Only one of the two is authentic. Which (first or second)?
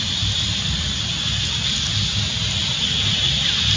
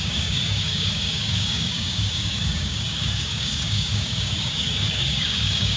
first